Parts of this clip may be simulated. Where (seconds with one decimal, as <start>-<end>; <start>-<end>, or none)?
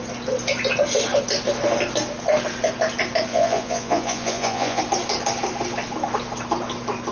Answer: 3.3-4.8